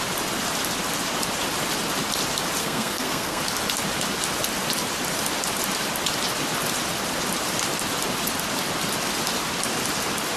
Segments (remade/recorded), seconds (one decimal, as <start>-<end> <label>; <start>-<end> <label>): 0.0-2.6 recorded; 2.6-3.4 remade; 3.4-10.4 recorded